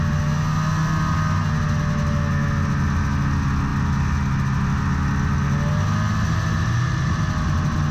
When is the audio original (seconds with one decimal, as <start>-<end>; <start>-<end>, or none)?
0.0-7.9